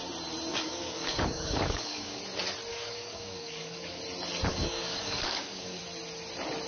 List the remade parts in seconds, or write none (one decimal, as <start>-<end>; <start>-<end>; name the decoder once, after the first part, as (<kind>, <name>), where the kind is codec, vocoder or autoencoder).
0.5-2.2 (codec, DAC); 2.7-4.0; 4.5-5.8